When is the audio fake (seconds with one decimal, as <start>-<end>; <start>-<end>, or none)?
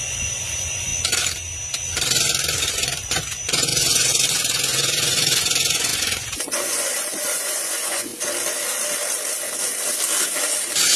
0.0-0.9; 2.7-8.1